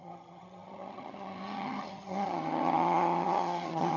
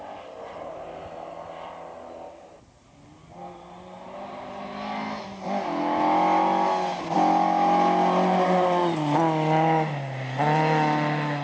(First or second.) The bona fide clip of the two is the second